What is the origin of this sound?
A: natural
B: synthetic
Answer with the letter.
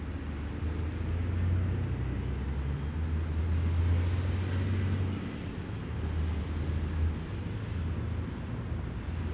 A